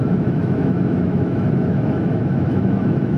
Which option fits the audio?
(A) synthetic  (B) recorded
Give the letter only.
A